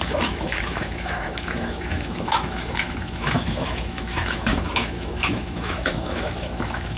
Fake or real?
fake